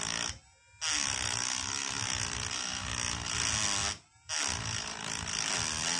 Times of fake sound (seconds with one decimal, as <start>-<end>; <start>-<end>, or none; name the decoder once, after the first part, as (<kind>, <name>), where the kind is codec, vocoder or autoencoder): none